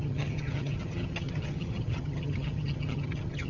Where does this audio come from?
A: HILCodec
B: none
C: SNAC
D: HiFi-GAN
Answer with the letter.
D